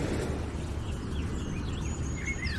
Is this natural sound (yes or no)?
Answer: yes